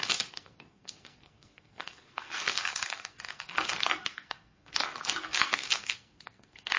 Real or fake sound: fake